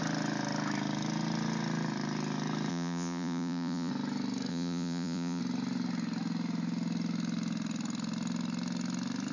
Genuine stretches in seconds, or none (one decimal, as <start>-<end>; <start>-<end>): 0.0-2.7; 3.9-4.5; 5.4-9.3